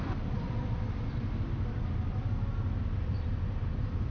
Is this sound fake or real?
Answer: real